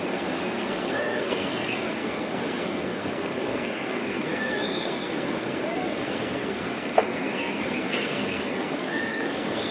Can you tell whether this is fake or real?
fake